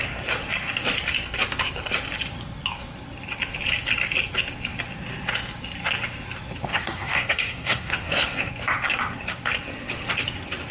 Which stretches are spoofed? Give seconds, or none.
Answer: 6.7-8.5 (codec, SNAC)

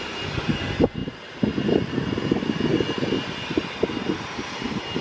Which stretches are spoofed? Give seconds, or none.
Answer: 0.0-1.0 (vocoder, BigVGAN v2); 3.9-5.0

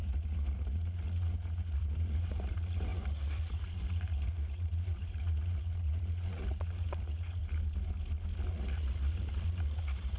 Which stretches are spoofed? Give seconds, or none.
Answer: 0.0-7.4 (vocoder, Vocos); 8.5-10.2

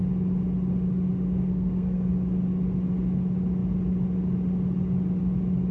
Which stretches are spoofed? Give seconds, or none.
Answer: 1.4-2.1 (codec, SNAC)

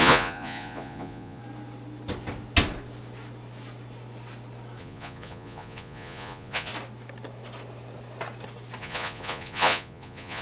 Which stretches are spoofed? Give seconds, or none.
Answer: 0.0-1.4 (vocoder, Vocos); 4.8-6.7; 8.8-10.4